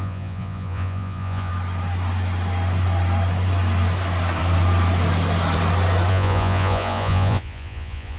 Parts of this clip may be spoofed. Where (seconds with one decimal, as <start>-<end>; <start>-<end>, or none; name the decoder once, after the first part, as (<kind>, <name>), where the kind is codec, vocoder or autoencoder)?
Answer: 0.0-1.5 (vocoder, Vocos); 6.1-8.2